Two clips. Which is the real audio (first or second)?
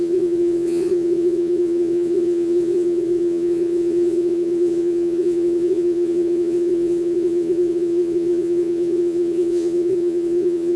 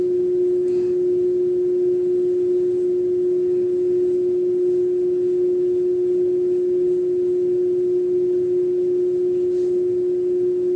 second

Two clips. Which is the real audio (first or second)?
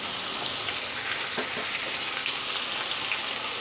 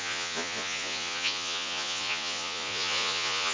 first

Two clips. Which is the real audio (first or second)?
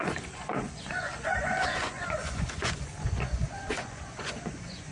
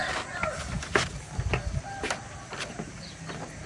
second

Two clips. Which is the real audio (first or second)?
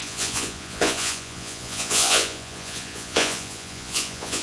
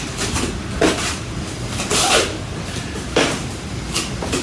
second